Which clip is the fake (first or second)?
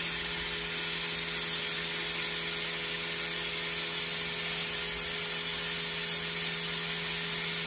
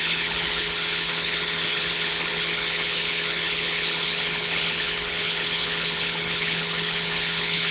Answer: second